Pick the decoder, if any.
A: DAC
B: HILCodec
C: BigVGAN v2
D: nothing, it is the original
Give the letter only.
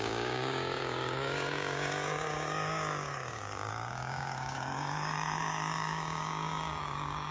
A